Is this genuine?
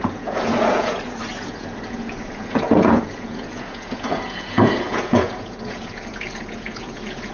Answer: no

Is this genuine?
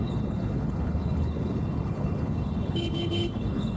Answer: no